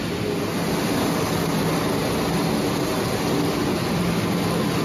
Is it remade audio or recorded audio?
recorded